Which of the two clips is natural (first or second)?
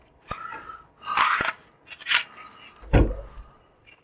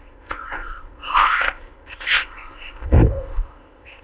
first